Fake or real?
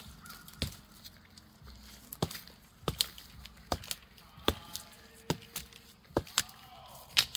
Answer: real